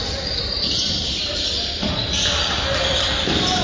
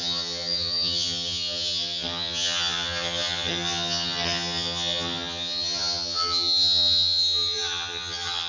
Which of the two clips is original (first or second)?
first